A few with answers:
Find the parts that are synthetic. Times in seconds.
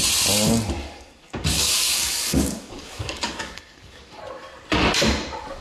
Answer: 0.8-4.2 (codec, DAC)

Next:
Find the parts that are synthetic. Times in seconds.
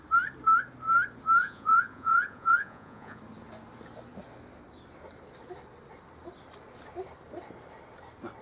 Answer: 1.4-3.2 (vocoder, Vocos)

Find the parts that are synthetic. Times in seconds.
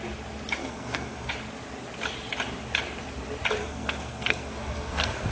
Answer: 0.6-1.3 (codec, SNAC); 3.6-5.3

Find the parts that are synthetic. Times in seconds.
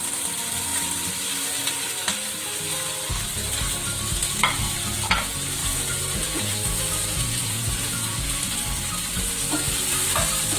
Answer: 5.6-8.5 (vocoder, Vocos)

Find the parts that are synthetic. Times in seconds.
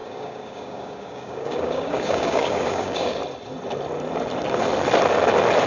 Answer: 0.0-3.2 (codec, DAC)